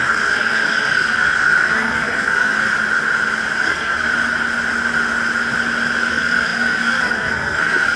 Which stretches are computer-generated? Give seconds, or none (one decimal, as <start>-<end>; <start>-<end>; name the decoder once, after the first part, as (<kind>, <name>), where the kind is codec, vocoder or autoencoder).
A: 0.0-2.7 (codec, SNAC); 3.6-4.1; 6.1-8.0